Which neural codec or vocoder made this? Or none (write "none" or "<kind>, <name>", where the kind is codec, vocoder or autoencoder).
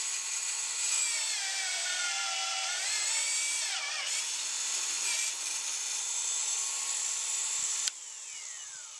vocoder, BigVGAN v2